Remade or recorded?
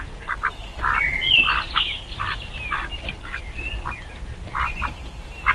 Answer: recorded